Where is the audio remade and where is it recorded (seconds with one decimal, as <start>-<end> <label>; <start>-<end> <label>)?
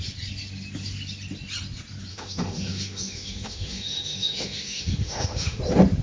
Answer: 0.0-2.1 recorded; 2.1-5.6 remade; 5.6-6.0 recorded